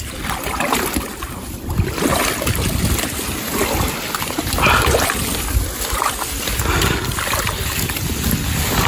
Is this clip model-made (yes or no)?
no